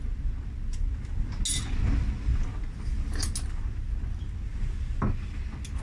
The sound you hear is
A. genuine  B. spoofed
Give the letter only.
A